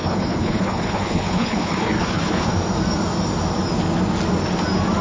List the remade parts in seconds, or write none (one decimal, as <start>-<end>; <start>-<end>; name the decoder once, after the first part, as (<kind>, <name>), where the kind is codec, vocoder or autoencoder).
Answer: 0.0-2.5 (codec, HILCodec)